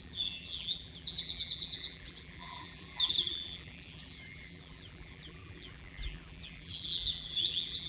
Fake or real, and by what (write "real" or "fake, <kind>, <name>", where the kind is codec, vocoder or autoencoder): fake, vocoder, BigVGAN v2